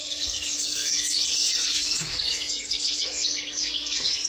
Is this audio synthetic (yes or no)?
yes